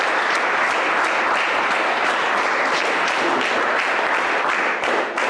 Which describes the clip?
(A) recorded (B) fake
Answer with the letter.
A